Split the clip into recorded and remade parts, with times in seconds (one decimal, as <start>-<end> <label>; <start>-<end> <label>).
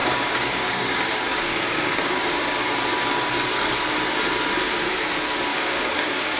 0.0-2.4 remade; 2.4-5.5 recorded; 5.5-6.4 remade